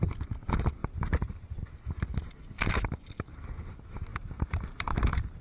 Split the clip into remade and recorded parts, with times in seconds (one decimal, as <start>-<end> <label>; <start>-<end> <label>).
0.0-0.8 recorded; 0.8-1.7 remade; 1.7-4.1 recorded; 4.1-5.4 remade